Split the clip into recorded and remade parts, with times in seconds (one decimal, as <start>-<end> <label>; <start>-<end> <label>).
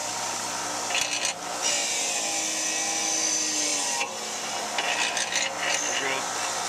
0.0-6.7 recorded